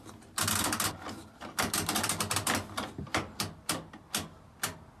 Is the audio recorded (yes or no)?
yes